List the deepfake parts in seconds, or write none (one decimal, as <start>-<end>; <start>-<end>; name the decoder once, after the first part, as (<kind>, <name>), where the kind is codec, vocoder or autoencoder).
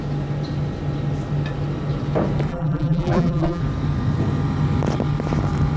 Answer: 2.5-3.6 (vocoder, BigVGAN v2)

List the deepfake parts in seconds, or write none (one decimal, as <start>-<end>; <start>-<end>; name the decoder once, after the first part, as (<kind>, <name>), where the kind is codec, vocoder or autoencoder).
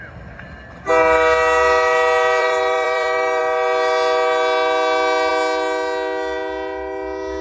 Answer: 2.4-3.4 (vocoder, BigVGAN v2)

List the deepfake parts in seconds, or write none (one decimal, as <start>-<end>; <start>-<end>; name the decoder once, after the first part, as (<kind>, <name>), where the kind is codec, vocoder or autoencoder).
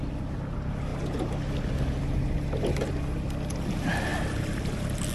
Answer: 4.1-4.6 (vocoder, BigVGAN v2)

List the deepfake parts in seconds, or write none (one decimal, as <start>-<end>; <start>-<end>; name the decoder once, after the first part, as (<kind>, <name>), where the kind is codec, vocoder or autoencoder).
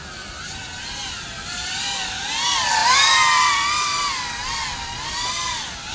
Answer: none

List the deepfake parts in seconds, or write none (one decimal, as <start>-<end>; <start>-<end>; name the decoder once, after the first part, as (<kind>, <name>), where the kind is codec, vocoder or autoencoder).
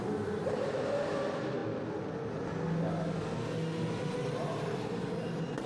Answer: none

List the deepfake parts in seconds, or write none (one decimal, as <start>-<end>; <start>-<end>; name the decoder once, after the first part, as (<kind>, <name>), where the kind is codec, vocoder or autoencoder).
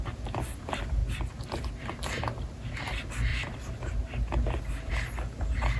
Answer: 3.3-4.9 (vocoder, BigVGAN v2)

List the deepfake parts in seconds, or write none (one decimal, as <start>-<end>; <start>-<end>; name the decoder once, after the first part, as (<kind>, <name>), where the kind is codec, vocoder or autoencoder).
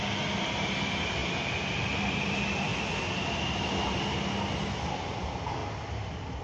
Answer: none